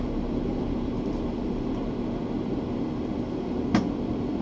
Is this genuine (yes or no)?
no